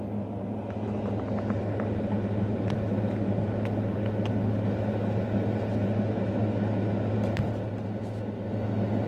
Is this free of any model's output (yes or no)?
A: yes